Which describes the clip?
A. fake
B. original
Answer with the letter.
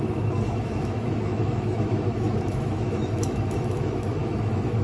A